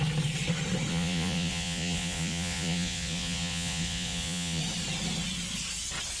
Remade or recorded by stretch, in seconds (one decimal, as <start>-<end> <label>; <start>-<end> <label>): 0.0-0.9 recorded; 0.9-4.6 remade; 4.6-6.2 recorded

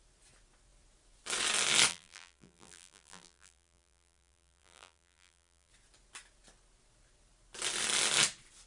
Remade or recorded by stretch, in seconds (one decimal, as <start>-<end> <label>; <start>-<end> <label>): 0.0-1.9 recorded; 1.9-5.7 remade; 5.7-8.7 recorded

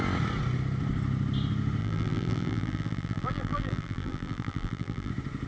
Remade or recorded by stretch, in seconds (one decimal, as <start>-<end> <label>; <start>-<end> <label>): 0.0-1.8 recorded; 1.8-5.1 remade; 5.1-5.5 recorded

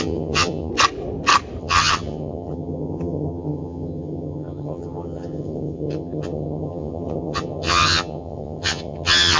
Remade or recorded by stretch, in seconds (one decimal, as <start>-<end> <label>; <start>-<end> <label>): 0.0-0.7 remade; 0.7-1.6 recorded; 1.6-9.4 remade

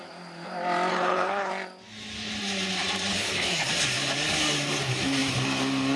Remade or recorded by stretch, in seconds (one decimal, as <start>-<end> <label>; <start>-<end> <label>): 0.0-0.9 recorded; 0.9-1.5 remade; 1.5-3.1 recorded; 3.1-3.7 remade; 3.7-6.0 recorded

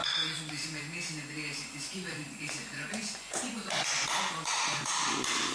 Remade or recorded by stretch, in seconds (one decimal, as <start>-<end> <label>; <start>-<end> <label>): 0.0-0.8 remade; 0.8-1.6 recorded; 1.6-4.9 remade; 4.9-5.5 recorded

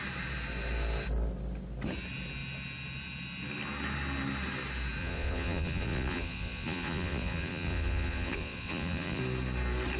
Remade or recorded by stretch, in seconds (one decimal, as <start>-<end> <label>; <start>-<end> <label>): 0.0-5.0 recorded; 5.0-9.2 remade; 9.2-10.0 recorded

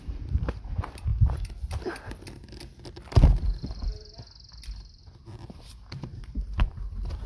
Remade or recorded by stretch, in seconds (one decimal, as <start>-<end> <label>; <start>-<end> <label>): 0.0-1.1 remade; 1.1-5.2 recorded; 5.2-7.3 remade